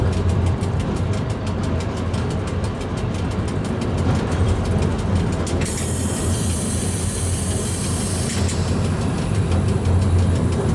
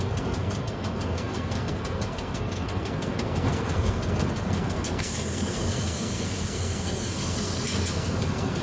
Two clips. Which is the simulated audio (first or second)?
second